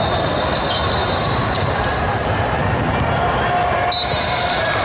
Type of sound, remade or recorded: recorded